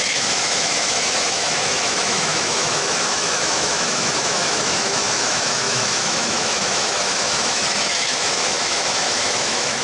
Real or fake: fake